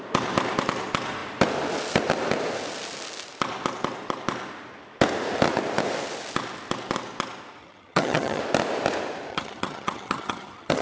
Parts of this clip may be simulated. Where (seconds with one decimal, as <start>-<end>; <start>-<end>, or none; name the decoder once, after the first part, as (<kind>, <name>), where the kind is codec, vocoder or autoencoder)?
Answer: 7.6-8.4 (vocoder, HiFi-GAN); 9.3-10.8